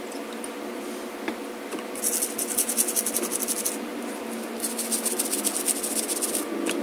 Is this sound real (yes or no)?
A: yes